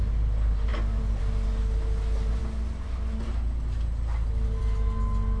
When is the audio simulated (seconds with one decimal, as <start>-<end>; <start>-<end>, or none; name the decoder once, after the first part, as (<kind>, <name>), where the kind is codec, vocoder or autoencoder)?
none